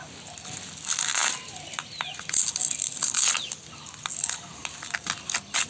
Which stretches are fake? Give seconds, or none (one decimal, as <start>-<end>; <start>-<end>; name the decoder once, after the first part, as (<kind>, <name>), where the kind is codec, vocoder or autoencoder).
none